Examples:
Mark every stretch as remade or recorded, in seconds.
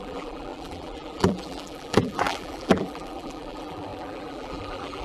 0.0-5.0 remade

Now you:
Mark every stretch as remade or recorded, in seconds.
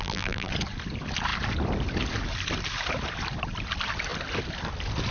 0.0-0.5 remade; 0.5-5.1 recorded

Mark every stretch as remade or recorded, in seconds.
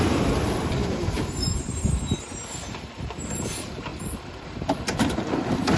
0.0-5.8 remade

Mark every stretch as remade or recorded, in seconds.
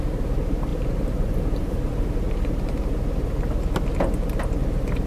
0.0-0.7 recorded; 0.7-2.8 remade; 2.8-5.1 recorded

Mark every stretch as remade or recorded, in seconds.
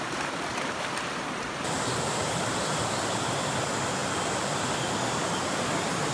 0.0-0.5 recorded; 0.5-3.3 remade; 3.3-6.1 recorded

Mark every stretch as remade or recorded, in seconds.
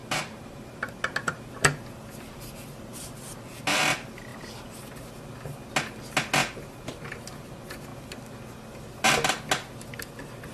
0.0-0.9 remade; 0.9-4.3 recorded; 4.3-5.1 remade; 5.1-10.5 recorded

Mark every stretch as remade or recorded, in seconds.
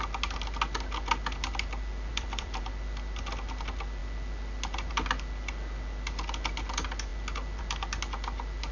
0.0-2.1 recorded; 2.1-2.6 remade; 2.6-8.7 recorded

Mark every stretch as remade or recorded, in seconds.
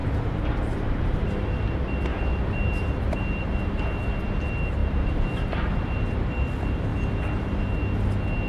0.0-1.3 remade; 1.3-2.1 recorded; 2.1-3.4 remade; 3.4-4.8 recorded; 4.8-5.7 remade; 5.7-8.5 recorded